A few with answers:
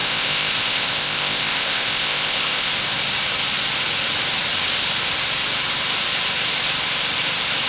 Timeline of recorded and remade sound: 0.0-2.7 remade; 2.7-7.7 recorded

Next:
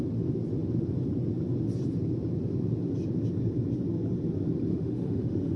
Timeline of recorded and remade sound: 0.0-4.7 recorded; 4.7-5.6 remade

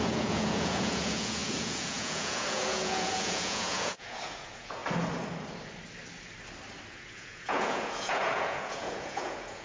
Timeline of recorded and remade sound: 0.0-4.8 remade; 4.8-6.9 recorded; 6.9-9.6 remade

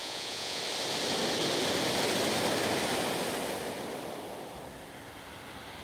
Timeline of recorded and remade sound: 0.0-0.6 remade; 0.6-5.8 recorded

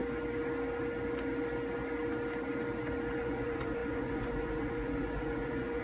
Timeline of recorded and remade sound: 0.0-3.2 recorded; 3.2-5.8 remade

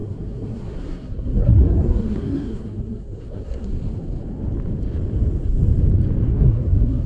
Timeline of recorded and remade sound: 0.0-3.7 remade; 3.7-6.3 recorded; 6.3-7.1 remade